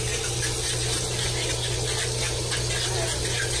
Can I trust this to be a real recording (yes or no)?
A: yes